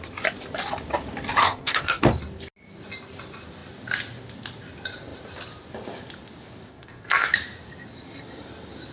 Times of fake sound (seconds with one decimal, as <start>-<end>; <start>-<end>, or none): 1.4-2.0; 6.7-7.3